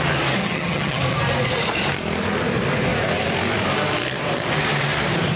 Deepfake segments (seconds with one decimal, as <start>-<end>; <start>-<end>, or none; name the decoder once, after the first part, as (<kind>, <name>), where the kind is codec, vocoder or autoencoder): 0.4-1.0 (vocoder, HiFi-GAN)